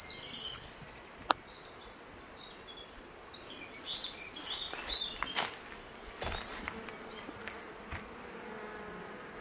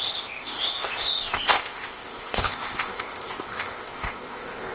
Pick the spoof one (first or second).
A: second